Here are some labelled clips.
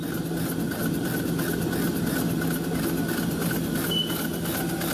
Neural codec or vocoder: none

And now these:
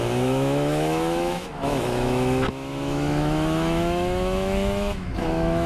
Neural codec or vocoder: autoencoder, DAC-VAE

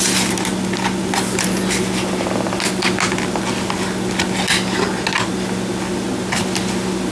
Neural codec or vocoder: none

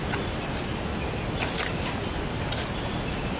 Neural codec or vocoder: none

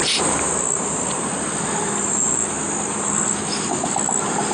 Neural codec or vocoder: none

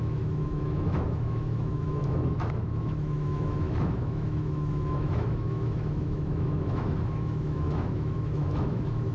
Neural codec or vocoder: autoencoder, DAC-VAE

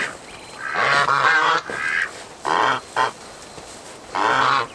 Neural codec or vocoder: none